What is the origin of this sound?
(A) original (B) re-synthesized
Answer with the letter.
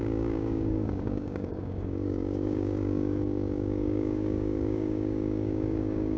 B